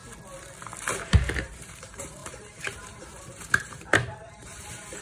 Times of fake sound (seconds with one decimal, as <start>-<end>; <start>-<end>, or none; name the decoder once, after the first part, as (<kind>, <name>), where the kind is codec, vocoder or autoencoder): 0.9-5.0 (vocoder, BigVGAN v2)